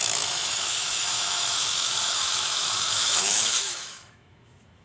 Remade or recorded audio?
remade